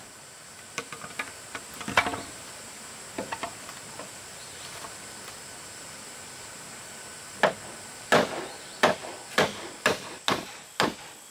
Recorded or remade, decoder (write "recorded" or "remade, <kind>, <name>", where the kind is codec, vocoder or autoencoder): recorded